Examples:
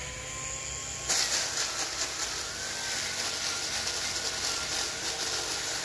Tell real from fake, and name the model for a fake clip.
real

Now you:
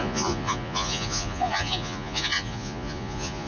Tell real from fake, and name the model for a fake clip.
fake, vocoder, Vocos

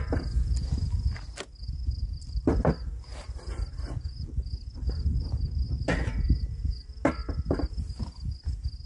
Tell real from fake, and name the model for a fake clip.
real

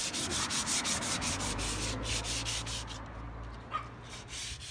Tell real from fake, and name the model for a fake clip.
real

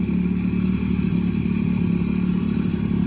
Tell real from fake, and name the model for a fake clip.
real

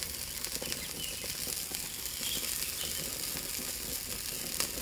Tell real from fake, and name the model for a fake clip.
real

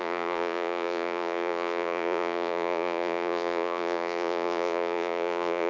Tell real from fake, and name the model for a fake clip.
fake, vocoder, Vocos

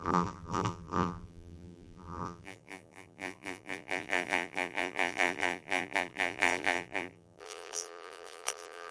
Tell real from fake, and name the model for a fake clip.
fake, vocoder, BigVGAN v2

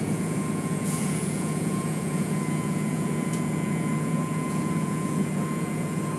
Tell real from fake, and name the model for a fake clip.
fake, vocoder, Vocos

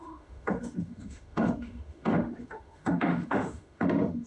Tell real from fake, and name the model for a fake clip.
fake, autoencoder, DAC-VAE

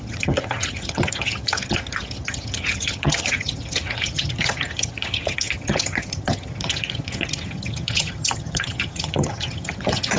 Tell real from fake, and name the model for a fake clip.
fake, vocoder, HiFi-GAN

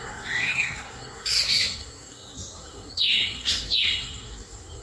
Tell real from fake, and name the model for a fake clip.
fake, codec, SNAC